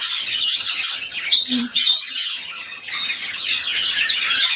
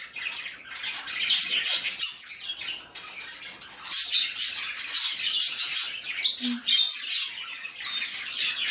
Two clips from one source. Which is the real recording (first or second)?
second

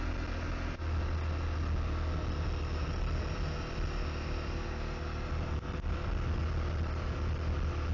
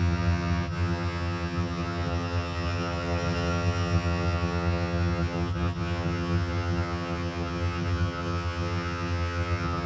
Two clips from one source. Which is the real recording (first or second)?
first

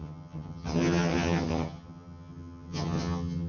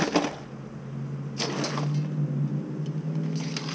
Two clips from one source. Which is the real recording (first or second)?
second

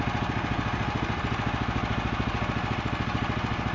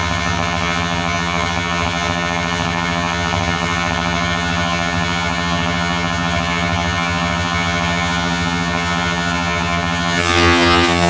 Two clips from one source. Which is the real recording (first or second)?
first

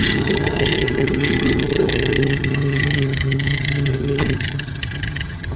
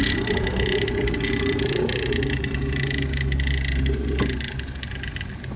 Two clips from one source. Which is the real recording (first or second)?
second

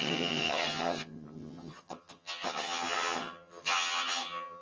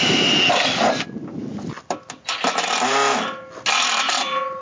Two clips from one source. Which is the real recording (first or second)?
second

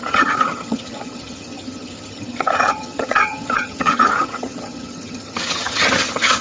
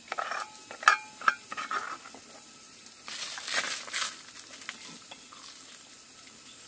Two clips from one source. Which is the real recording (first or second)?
second